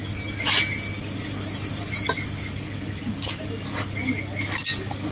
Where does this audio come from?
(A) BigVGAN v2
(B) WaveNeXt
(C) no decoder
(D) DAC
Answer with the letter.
C